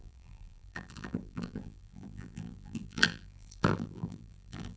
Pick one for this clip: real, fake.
fake